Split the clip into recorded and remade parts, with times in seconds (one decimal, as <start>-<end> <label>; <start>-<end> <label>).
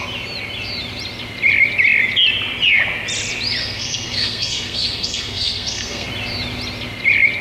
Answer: 0.0-3.6 recorded; 3.6-6.1 remade; 6.1-7.4 recorded